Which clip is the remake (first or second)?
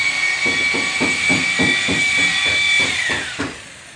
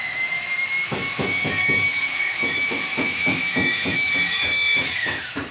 second